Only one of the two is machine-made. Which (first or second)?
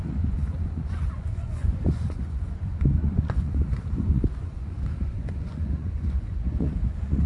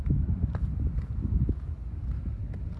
first